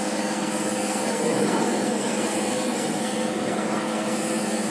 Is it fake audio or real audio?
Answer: fake